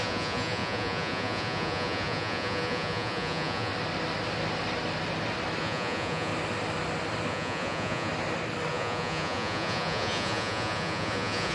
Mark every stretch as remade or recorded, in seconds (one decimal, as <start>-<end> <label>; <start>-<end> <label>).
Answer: 0.0-3.7 remade; 3.7-5.6 recorded; 5.6-6.3 remade; 6.3-7.3 recorded; 7.3-8.1 remade; 8.1-8.7 recorded; 8.7-11.5 remade